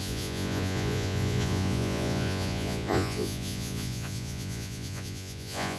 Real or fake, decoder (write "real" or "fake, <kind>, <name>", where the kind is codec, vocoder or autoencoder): fake, vocoder, Vocos